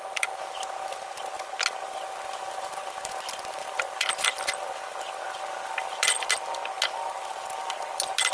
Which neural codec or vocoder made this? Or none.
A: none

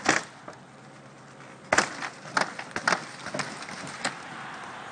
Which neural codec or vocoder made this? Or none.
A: none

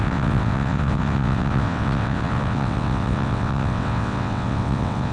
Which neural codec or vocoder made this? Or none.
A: vocoder, WaveNeXt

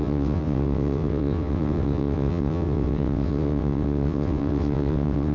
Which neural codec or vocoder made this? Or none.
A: vocoder, WaveNeXt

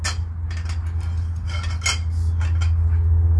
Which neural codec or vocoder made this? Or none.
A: none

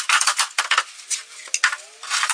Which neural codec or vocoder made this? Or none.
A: none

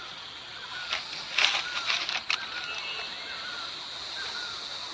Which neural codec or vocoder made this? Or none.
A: none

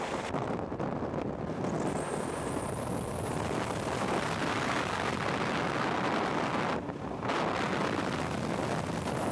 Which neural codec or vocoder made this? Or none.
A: none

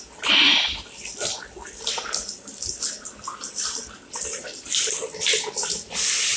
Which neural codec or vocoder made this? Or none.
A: none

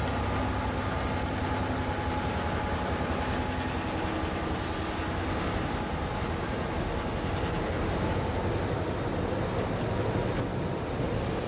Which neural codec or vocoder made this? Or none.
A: none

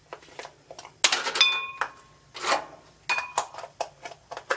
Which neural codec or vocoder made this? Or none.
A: none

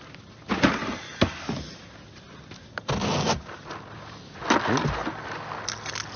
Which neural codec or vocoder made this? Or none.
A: none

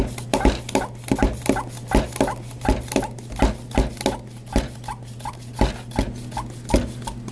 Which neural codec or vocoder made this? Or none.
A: none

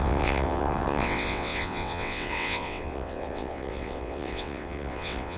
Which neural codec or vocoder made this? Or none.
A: vocoder, WaveNeXt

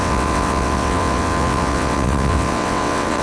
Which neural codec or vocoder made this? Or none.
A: vocoder, WaveNeXt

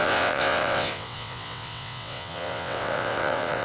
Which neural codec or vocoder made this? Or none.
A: vocoder, WaveNeXt